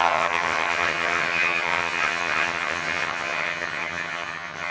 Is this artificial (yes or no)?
yes